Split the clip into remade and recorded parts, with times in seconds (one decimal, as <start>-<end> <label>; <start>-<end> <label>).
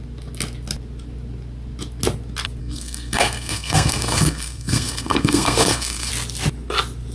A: 0.0-2.6 recorded; 2.6-6.1 remade; 6.1-7.1 recorded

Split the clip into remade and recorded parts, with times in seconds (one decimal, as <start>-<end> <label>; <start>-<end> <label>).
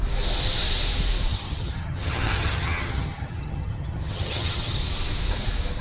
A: 0.0-1.3 recorded; 1.3-4.8 remade; 4.8-5.8 recorded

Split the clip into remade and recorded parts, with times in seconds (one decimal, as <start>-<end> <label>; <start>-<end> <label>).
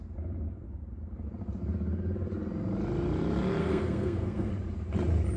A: 0.0-3.6 recorded; 3.6-4.5 remade; 4.5-5.4 recorded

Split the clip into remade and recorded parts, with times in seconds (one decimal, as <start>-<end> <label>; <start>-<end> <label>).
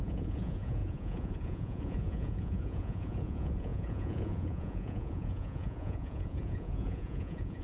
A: 0.0-7.6 remade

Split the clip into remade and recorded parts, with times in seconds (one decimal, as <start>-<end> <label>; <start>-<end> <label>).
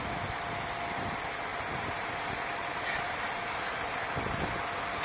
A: 0.0-1.5 recorded; 1.5-4.5 remade; 4.5-5.0 recorded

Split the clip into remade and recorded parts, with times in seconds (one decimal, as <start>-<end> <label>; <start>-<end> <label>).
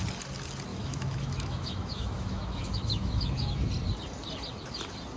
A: 0.0-0.7 recorded; 0.7-3.7 remade; 3.7-5.2 recorded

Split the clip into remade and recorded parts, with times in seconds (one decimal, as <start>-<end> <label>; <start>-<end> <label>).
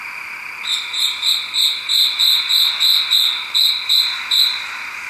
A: 0.0-5.1 recorded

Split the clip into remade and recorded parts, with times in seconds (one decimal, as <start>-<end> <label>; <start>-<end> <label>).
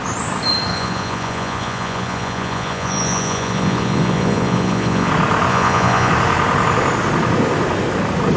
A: 0.0-0.7 recorded; 0.7-5.1 remade; 5.1-5.5 recorded; 5.5-6.1 remade; 6.1-8.4 recorded